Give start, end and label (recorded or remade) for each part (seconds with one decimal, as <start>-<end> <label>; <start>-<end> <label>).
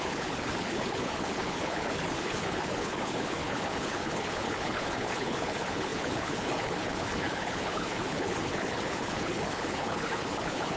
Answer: 0.0-10.8 remade